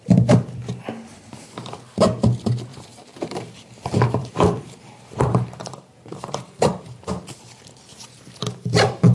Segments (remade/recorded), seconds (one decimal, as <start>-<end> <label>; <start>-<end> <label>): 0.0-2.7 recorded; 2.7-7.2 remade; 7.2-9.1 recorded